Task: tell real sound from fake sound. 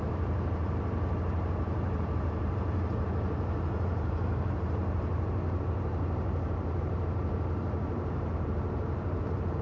fake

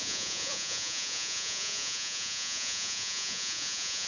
fake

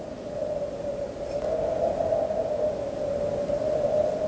fake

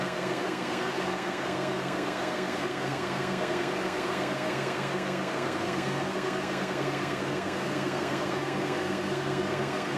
fake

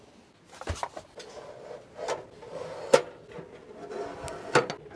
real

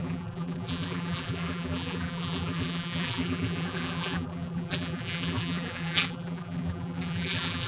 fake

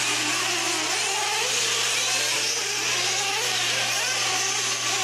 real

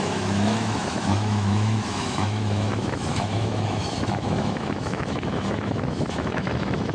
fake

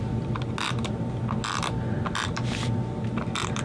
real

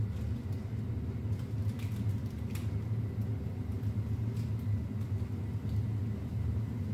real